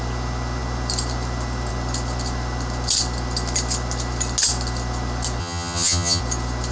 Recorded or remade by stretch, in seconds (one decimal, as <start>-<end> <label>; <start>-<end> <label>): 0.0-5.4 recorded; 5.4-6.2 remade; 6.2-6.7 recorded